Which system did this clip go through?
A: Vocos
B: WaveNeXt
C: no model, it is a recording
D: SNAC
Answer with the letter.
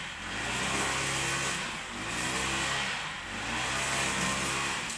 C